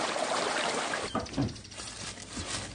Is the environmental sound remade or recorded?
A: recorded